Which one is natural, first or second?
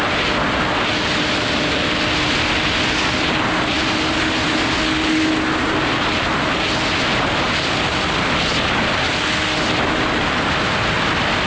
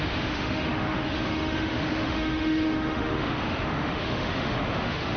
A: first